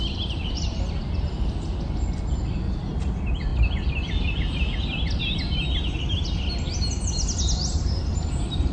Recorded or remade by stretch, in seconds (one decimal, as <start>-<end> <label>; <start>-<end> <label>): 0.0-8.7 recorded